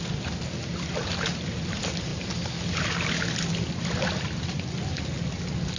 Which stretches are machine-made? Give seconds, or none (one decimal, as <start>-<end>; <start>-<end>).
none